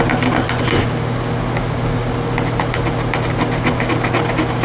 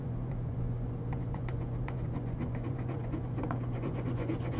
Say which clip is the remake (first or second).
second